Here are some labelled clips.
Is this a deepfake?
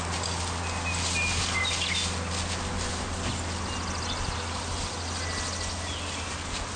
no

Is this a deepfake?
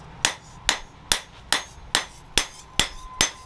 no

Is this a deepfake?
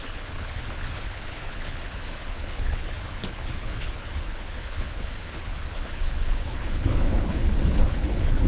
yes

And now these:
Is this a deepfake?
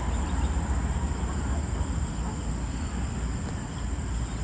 no